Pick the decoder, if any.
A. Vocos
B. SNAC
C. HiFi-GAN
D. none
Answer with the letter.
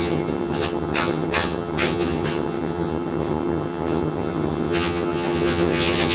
C